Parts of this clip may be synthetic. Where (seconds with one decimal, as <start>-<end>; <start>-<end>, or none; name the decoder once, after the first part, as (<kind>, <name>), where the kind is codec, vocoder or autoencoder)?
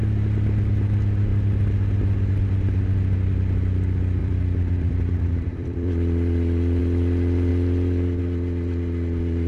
4.2-6.8 (vocoder, BigVGAN v2); 7.5-8.2